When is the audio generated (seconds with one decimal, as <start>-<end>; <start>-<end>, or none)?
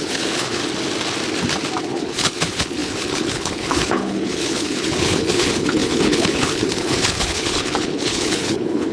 0.0-0.6; 1.8-8.9